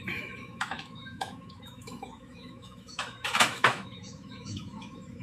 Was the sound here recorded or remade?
remade